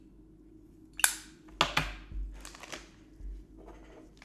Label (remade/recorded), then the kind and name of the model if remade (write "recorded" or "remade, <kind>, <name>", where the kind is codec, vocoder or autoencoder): recorded